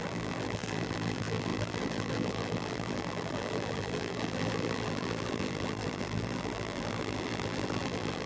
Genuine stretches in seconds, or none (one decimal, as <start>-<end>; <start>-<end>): none